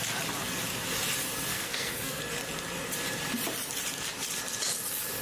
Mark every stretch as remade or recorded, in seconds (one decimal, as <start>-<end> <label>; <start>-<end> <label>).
0.0-1.5 recorded; 1.5-2.2 remade; 2.2-5.2 recorded